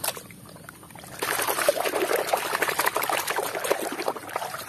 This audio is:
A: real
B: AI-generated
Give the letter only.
A